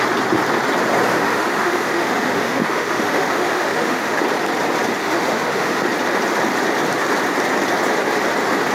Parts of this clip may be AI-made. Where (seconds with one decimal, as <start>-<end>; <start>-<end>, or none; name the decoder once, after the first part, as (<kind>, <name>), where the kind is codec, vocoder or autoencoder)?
1.1-4.2 (autoencoder, DAC-VAE); 5.0-5.8